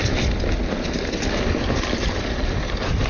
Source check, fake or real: real